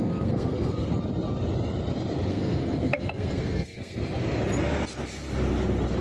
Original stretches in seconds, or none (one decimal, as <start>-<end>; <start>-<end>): 0.9-2.3; 4.0-6.0